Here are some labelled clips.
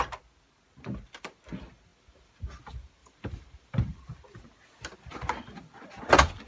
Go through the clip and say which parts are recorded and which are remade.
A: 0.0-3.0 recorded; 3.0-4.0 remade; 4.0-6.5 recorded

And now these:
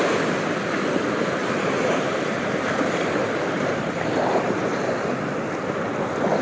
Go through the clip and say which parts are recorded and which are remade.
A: 0.0-1.4 recorded; 1.4-5.2 remade; 5.2-6.4 recorded

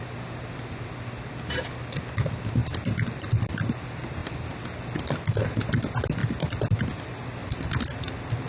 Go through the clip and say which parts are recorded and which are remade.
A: 0.0-8.5 recorded

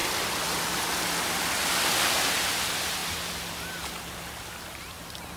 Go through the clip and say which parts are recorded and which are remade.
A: 0.0-5.4 recorded

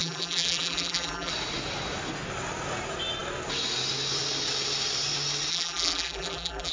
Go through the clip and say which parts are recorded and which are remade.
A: 0.0-1.3 remade; 1.3-5.5 recorded; 5.5-6.7 remade

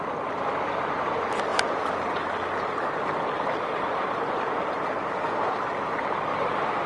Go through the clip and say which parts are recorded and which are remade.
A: 0.0-6.9 recorded